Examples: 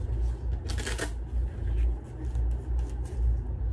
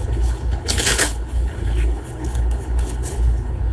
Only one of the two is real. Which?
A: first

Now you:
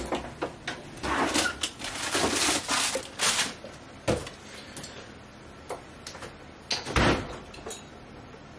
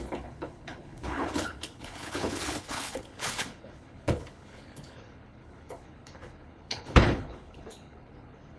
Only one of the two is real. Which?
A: first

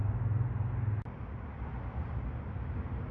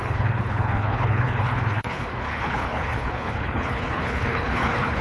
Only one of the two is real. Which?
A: first